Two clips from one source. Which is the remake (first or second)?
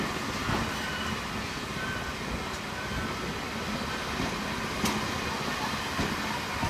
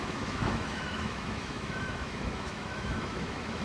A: second